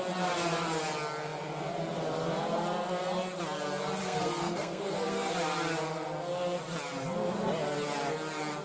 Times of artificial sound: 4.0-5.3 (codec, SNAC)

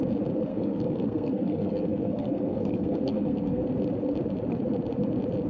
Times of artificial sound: 0.5-3.6 (codec, SNAC)

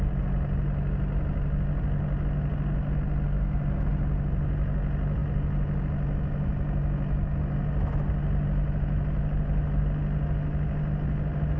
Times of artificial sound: none

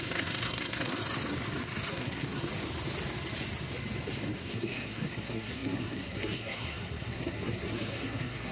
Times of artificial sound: 0.0-1.0 (codec, SNAC); 1.9-2.5; 4.4-8.5